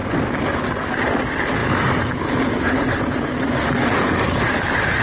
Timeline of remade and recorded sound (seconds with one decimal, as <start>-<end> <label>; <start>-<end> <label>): 0.0-5.0 recorded